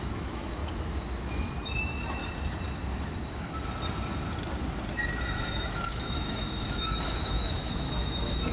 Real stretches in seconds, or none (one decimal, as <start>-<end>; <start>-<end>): 0.6-1.8; 2.2-5.2